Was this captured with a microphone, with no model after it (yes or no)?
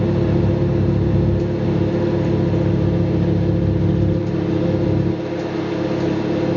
yes